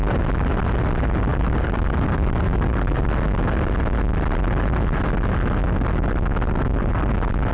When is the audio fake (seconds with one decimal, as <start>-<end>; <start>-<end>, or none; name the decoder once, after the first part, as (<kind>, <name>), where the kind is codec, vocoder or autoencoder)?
1.3-3.1 (vocoder, BigVGAN v2)